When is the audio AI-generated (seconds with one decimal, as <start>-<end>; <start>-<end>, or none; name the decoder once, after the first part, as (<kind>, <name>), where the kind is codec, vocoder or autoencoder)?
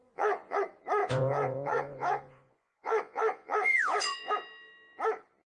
0.0-0.6 (vocoder, Vocos); 1.0-4.3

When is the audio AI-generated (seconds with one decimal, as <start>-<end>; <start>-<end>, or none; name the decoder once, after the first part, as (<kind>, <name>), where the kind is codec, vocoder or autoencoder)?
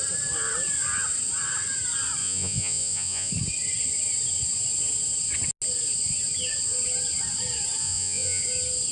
2.2-3.3 (vocoder, Vocos); 7.8-8.4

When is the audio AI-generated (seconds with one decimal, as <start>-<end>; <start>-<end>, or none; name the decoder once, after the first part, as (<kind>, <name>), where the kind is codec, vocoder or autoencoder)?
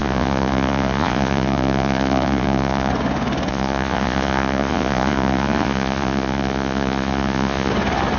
0.0-2.9 (vocoder, Vocos); 3.5-7.7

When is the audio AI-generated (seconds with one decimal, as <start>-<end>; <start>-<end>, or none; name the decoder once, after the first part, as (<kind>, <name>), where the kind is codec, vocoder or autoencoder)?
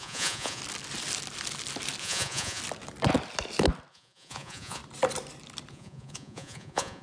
0.0-0.6 (vocoder, Vocos); 2.0-2.6; 3.9-4.8; 5.7-7.0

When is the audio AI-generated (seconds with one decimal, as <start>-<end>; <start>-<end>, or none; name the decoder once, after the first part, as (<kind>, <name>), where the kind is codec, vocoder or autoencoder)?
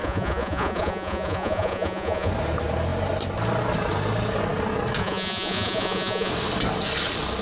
0.0-2.3 (vocoder, Vocos); 5.0-6.3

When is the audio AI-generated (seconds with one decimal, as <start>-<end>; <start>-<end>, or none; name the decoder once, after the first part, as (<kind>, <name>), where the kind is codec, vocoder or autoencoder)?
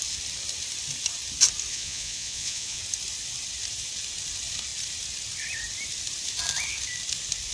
1.7-2.8 (vocoder, Vocos)